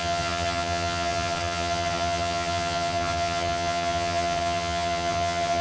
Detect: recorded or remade remade